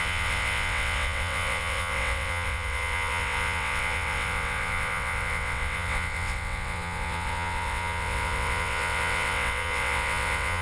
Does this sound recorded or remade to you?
remade